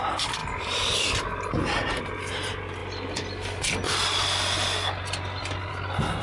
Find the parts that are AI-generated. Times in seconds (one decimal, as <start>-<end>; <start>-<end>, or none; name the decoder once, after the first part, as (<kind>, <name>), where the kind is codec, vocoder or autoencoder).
none